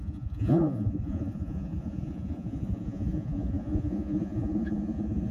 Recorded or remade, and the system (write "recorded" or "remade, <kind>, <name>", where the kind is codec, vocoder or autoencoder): remade, vocoder, Vocos